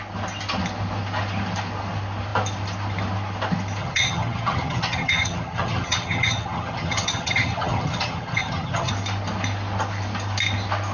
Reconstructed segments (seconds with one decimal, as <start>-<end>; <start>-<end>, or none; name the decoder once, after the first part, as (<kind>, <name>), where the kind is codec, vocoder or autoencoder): 3.8-8.9 (vocoder, HiFi-GAN)

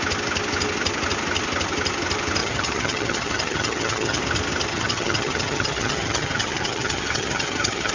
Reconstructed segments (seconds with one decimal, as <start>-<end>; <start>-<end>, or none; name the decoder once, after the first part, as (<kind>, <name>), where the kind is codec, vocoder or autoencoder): 2.4-4.2 (vocoder, HiFi-GAN); 4.7-7.9

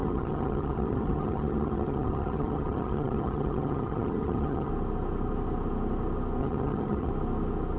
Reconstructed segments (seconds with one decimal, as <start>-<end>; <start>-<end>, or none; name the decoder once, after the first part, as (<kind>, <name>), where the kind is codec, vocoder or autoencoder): 0.0-4.7 (vocoder, HiFi-GAN); 6.4-7.1

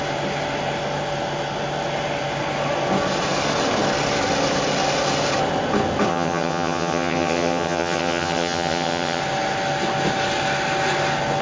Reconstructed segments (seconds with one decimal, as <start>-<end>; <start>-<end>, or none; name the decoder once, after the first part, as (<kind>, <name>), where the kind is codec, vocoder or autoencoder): 6.1-9.2 (vocoder, HiFi-GAN)